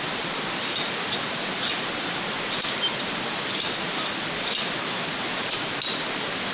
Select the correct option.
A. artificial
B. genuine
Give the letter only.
B